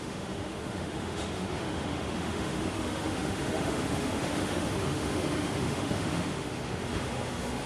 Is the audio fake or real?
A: fake